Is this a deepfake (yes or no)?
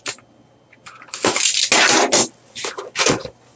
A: no